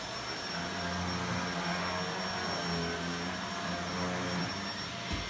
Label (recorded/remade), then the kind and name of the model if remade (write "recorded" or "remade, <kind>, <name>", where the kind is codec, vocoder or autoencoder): recorded